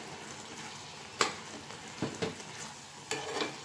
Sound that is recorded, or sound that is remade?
recorded